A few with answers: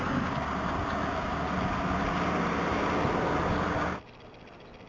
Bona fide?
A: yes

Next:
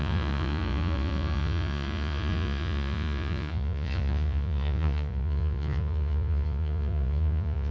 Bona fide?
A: no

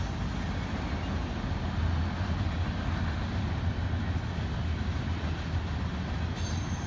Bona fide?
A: yes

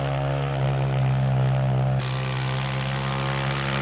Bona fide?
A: yes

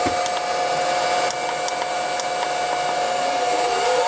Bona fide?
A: yes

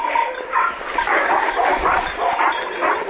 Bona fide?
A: yes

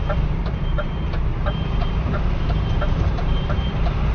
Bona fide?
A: no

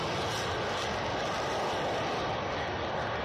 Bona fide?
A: yes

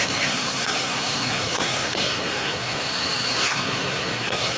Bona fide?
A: no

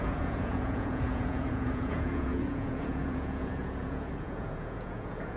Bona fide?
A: no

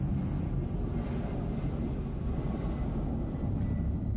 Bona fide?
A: yes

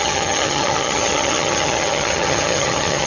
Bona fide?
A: no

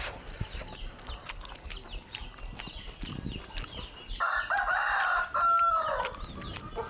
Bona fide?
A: yes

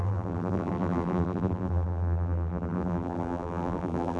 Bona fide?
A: no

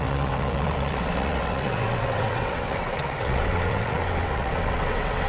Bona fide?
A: no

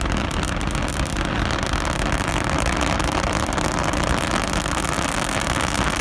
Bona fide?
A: yes